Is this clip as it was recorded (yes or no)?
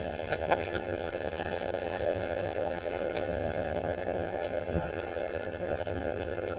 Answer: no